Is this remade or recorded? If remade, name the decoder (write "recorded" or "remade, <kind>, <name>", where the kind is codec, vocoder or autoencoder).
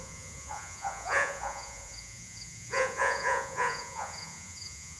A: remade, vocoder, Vocos